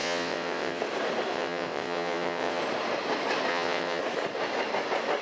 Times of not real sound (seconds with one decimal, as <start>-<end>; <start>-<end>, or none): 0.0-0.8; 1.3-2.6; 3.5-4.0